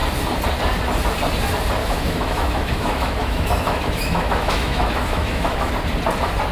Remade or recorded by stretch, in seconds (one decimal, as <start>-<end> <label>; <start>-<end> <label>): 0.0-1.8 recorded; 1.8-5.7 remade; 5.7-6.5 recorded